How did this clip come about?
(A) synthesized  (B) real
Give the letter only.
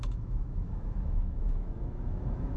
A